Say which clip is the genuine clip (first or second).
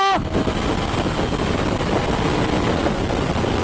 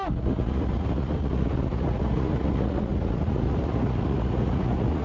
first